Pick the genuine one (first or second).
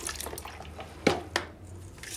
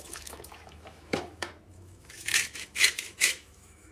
first